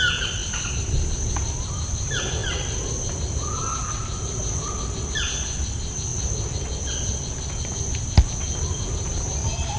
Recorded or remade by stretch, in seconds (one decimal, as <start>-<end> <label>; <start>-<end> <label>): 0.0-9.8 recorded